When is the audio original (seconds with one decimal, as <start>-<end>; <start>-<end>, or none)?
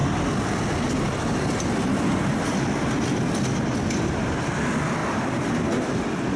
0.0-6.4